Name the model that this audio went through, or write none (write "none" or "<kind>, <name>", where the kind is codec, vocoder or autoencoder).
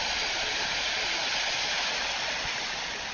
none